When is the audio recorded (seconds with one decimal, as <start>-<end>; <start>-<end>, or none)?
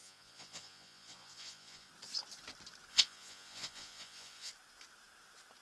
1.9-2.9; 4.5-5.6